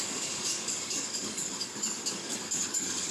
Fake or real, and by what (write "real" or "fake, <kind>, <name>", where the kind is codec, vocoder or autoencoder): fake, codec, DAC